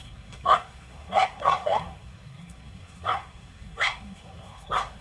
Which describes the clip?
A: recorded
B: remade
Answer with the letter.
B